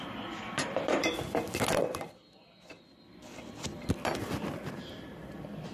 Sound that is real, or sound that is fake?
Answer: fake